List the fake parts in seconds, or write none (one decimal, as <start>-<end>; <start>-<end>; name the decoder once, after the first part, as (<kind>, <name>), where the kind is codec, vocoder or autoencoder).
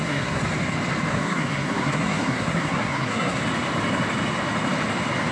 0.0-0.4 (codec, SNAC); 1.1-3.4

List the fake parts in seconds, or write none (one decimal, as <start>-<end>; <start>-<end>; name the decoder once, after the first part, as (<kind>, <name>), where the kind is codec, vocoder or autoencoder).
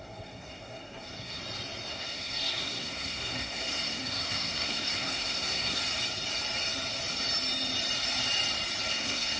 0.0-1.4 (codec, SNAC); 1.9-5.8; 8.9-9.4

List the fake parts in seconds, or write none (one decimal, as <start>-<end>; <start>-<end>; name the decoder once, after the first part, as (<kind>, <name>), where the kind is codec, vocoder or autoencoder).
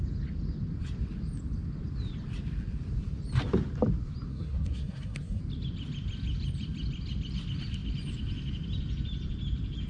4.3-5.4 (codec, SNAC)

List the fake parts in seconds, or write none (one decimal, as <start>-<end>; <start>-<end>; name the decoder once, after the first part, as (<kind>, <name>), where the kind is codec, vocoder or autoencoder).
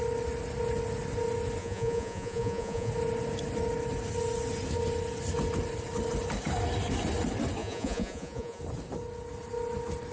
1.6-2.9 (vocoder, Vocos); 7.6-8.6